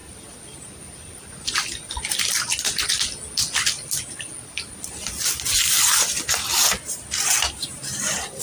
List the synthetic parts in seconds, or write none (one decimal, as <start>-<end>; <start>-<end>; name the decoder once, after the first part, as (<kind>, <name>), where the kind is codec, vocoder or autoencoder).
none